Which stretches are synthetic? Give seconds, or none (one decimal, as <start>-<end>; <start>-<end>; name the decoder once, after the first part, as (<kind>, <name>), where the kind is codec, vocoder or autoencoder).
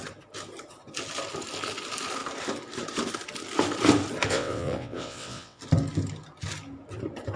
4.3-5.6 (vocoder, WaveNeXt)